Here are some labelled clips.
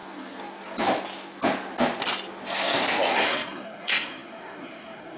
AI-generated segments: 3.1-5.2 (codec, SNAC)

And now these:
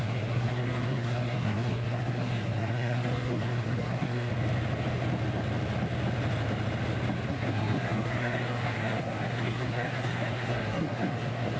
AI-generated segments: 0.0-4.3 (codec, SNAC); 7.3-11.6

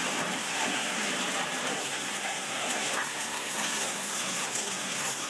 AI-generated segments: 0.4-1.1 (codec, SNAC); 1.7-5.3

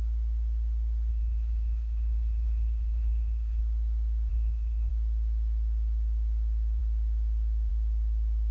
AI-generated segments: 1.1-3.6 (codec, SNAC); 4.3-4.9

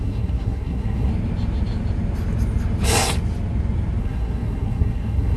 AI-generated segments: 0.0-1.1 (codec, SNAC); 4.0-5.4